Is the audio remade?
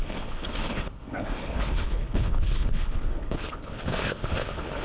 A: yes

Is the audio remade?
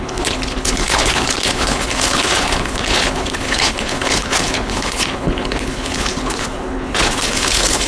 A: yes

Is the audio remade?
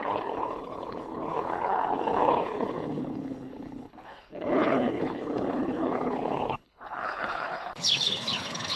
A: yes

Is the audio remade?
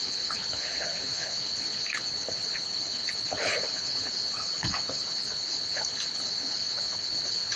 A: yes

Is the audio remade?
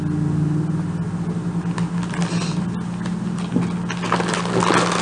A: no